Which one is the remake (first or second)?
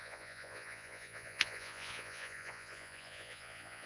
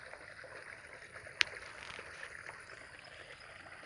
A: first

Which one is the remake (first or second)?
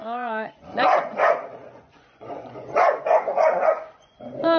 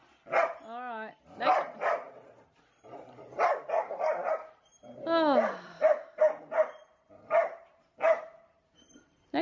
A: first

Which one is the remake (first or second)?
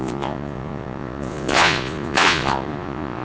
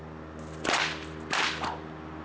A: first